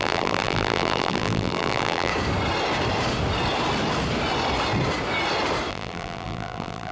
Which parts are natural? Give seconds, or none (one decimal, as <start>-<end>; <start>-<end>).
2.1-5.7